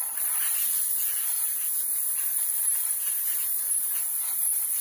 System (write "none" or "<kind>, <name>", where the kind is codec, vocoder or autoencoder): none